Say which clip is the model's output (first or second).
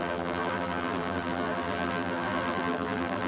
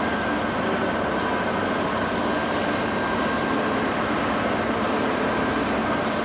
first